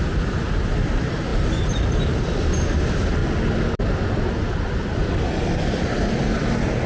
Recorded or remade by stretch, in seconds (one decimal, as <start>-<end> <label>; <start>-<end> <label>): 0.0-3.2 remade; 3.2-5.5 recorded; 5.5-6.9 remade